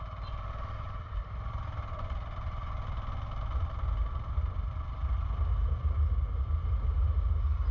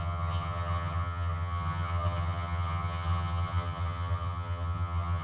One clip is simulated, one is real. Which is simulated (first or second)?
second